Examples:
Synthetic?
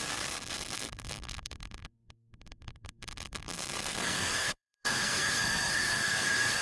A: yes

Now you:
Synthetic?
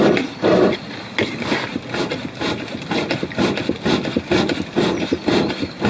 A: no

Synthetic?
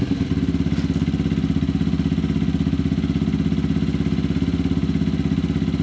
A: no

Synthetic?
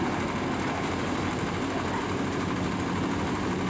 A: no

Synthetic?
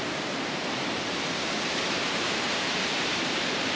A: yes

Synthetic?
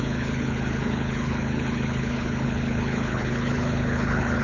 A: yes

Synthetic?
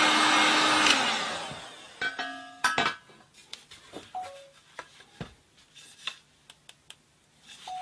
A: no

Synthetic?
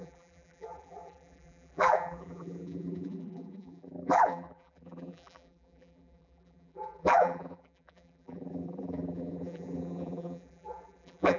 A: yes